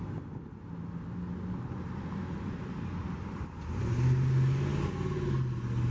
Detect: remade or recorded recorded